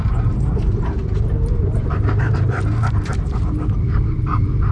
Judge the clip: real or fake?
fake